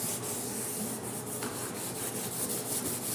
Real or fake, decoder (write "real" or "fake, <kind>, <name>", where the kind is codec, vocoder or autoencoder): real